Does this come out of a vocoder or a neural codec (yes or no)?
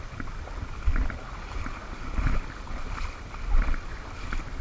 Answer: yes